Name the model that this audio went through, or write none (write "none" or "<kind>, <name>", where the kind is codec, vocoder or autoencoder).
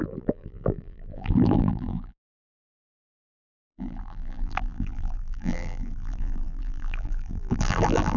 vocoder, BigVGAN v2